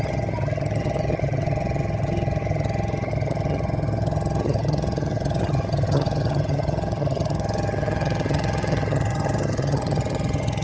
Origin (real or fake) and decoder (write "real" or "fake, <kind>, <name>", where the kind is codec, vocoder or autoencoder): fake, vocoder, HiFi-GAN